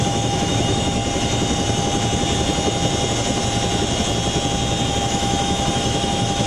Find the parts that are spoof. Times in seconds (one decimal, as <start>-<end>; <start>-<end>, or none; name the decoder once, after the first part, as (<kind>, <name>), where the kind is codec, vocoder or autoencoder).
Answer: 0.0-1.0 (autoencoder, DAC-VAE); 4.9-6.5